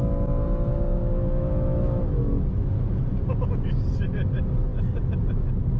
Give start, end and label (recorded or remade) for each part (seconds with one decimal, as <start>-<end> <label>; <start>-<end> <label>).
0.0-1.0 recorded; 1.0-3.5 remade; 3.5-5.8 recorded